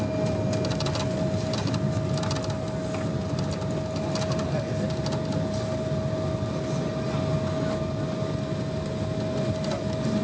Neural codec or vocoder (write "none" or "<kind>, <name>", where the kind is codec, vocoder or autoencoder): none